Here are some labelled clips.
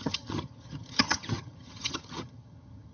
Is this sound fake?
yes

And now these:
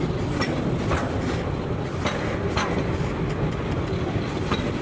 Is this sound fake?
no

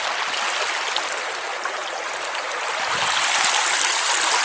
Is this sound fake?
no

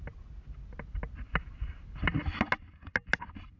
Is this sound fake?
no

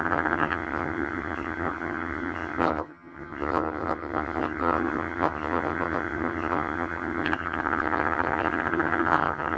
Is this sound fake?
yes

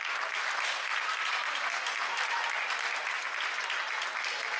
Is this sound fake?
no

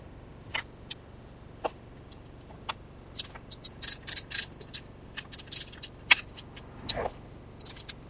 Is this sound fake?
no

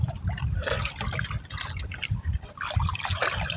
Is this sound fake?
no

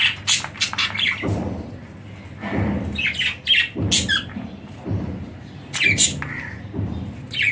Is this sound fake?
no